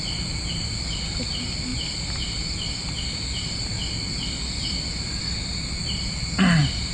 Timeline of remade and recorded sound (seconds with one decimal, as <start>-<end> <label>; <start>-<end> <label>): 0.0-1.7 remade; 1.7-5.2 recorded; 5.2-6.9 remade